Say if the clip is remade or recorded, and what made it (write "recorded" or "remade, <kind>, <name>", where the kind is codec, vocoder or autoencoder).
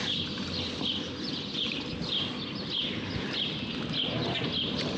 recorded